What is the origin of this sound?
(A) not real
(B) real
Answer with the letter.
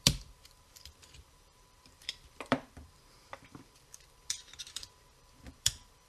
A